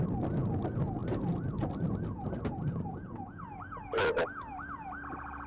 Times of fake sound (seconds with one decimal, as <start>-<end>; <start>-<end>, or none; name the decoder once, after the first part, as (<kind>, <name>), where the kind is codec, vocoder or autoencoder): none